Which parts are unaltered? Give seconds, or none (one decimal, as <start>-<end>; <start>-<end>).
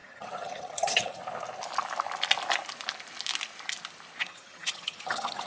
1.2-4.2